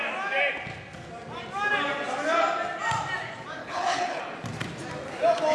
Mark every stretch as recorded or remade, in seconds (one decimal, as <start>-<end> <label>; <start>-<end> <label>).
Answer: 0.0-3.6 recorded; 3.6-4.2 remade; 4.2-5.5 recorded